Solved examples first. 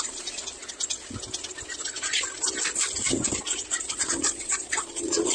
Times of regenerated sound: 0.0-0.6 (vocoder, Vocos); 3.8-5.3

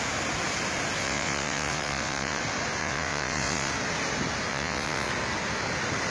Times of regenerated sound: 1.0-2.4 (vocoder, WaveNeXt); 2.8-3.7; 4.5-5.1

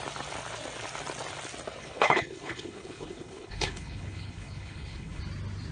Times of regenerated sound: 1.8-5.2 (codec, HILCodec)